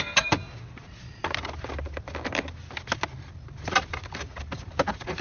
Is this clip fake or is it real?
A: real